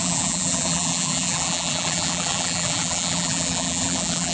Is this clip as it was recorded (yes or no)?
no